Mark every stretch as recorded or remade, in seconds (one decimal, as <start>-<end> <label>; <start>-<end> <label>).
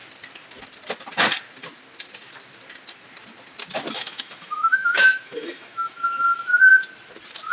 0.0-3.9 recorded; 3.9-6.5 remade; 6.5-7.5 recorded